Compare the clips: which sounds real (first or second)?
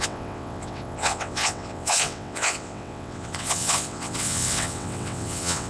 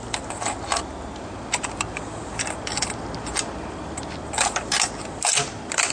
second